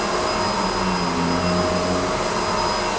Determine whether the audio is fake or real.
real